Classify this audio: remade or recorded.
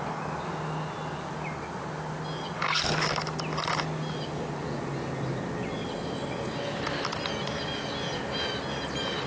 recorded